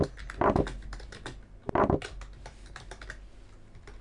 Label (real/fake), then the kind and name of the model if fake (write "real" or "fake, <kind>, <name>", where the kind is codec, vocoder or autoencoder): real